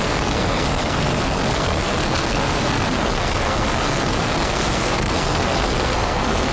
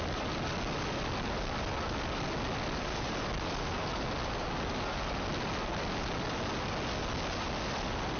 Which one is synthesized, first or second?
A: first